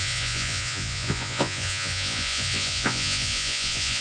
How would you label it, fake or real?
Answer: fake